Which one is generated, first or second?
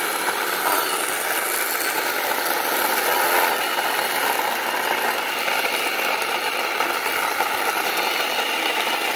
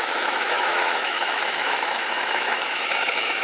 second